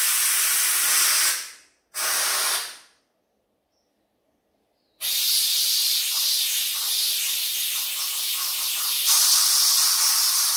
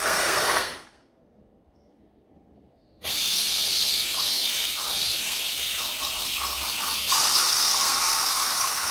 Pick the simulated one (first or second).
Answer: second